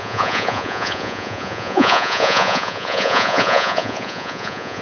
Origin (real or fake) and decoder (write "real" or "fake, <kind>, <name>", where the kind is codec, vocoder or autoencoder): fake, vocoder, Vocos